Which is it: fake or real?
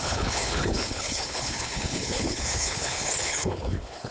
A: fake